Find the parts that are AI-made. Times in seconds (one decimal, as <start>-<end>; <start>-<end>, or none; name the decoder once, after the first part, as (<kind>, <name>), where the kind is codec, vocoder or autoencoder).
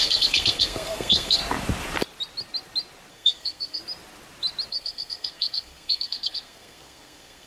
0.0-1.4 (codec, SNAC); 3.1-3.8; 4.7-7.5